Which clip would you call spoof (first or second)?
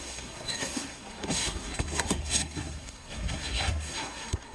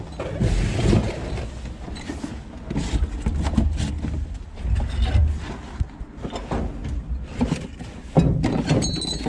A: first